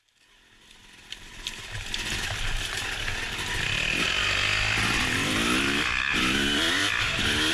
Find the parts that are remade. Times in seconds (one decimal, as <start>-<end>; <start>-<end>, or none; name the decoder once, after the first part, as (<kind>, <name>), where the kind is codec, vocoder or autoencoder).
6.8-7.5 (vocoder, BigVGAN v2)